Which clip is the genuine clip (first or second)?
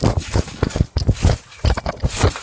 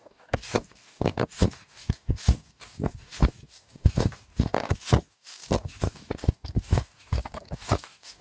first